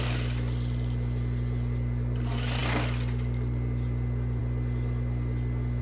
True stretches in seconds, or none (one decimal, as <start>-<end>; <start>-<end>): 0.0-5.8